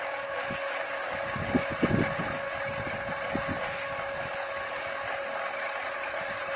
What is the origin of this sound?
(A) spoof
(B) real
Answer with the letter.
B